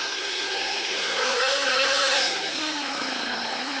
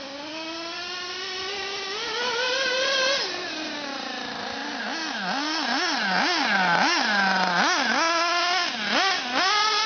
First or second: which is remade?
first